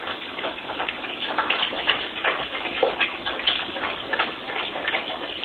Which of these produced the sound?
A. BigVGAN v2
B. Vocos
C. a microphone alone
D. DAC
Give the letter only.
D